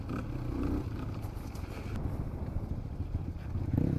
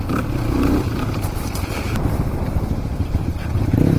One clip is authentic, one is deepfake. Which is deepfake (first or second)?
second